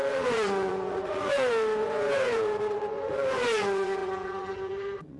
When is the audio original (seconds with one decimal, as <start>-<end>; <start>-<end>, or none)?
none